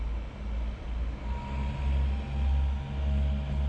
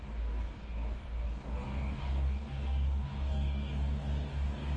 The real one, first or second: first